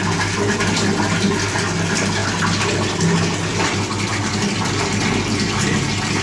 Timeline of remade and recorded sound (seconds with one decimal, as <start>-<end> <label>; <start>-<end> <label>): 0.0-6.2 recorded

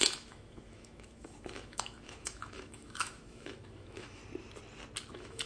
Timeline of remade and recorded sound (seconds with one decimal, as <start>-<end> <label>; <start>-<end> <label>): 0.0-4.2 remade; 4.2-5.1 recorded; 5.1-5.5 remade